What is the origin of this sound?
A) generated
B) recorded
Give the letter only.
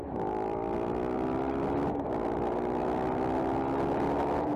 B